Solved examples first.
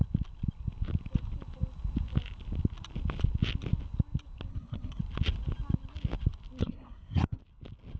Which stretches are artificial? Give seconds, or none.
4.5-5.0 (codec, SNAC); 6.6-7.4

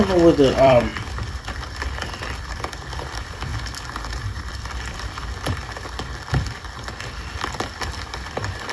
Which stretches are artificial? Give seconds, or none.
0.0-3.5 (vocoder, BigVGAN v2); 4.5-5.6; 8.1-8.7

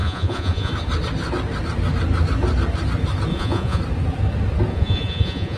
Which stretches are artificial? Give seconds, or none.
0.0-0.7 (vocoder, Vocos); 3.3-3.8; 4.7-5.6

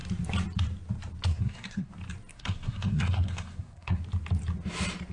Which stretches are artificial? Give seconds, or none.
1.3-1.9 (codec, SNAC); 2.3-4.0

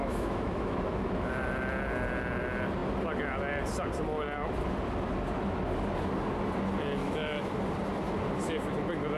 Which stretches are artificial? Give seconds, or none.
0.0-1.3 (autoencoder, DAC-VAE); 7.0-7.6